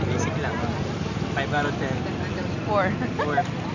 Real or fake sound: real